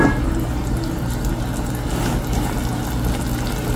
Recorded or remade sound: recorded